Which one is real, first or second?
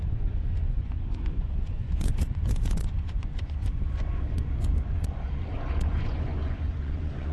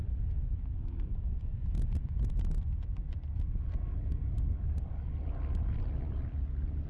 second